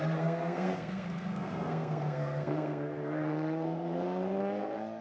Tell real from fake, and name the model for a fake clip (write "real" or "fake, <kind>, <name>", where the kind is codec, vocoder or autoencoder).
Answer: fake, codec, SNAC